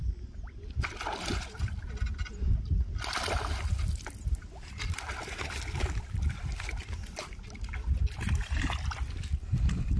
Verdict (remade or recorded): recorded